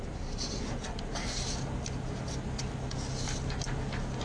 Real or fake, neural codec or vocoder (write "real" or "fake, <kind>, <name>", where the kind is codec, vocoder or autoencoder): real